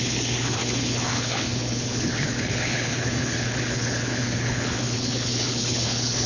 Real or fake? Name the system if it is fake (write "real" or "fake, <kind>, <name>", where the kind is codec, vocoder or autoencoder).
fake, codec, HILCodec